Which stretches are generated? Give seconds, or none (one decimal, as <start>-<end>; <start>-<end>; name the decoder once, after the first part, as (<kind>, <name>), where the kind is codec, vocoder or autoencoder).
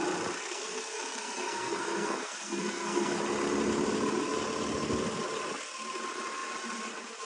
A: 0.4-3.2 (codec, SNAC)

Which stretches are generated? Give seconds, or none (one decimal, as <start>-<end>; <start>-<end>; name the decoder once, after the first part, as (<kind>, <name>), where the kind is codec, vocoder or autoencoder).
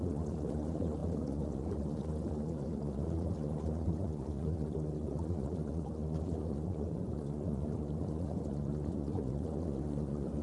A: 0.0-10.4 (vocoder, Vocos)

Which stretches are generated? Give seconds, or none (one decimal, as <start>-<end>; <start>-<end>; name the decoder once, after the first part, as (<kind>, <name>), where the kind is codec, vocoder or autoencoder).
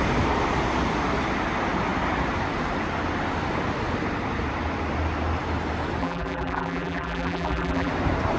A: 6.0-7.9 (vocoder, BigVGAN v2)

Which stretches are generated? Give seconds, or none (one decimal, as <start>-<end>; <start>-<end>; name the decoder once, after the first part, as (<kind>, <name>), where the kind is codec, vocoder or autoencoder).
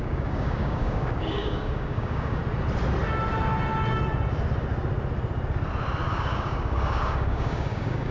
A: 0.0-2.4 (codec, DAC); 6.1-8.1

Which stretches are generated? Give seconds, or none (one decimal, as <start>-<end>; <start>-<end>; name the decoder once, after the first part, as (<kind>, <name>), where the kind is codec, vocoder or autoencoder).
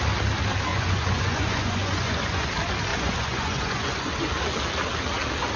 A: 0.7-2.5 (vocoder, Vocos); 2.9-4.3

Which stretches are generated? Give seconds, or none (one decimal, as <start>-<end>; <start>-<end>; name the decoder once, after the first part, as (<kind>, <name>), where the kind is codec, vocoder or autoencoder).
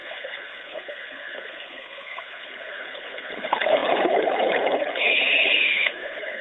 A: 0.0-6.4 (codec, HILCodec)